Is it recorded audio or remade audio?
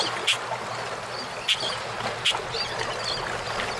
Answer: recorded